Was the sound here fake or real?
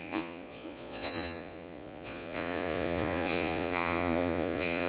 fake